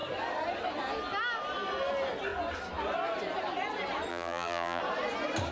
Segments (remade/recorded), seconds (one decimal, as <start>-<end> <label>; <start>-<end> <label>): 0.0-4.1 recorded; 4.1-4.8 remade; 4.8-5.5 recorded